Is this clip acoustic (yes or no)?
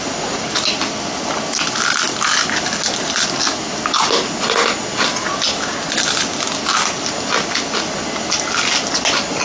yes